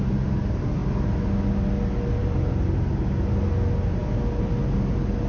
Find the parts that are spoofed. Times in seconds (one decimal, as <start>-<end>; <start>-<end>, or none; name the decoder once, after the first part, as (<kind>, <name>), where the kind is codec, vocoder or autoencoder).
none